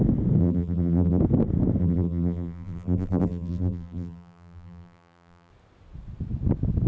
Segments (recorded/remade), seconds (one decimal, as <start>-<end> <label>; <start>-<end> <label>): 0.0-0.4 recorded; 0.4-1.2 remade; 1.2-1.8 recorded; 1.8-5.5 remade; 5.5-6.9 recorded